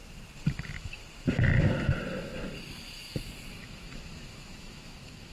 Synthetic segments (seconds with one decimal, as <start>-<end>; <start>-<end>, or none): 0.5-1.0; 3.5-5.3